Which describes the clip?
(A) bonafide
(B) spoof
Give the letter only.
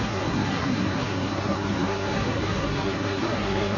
B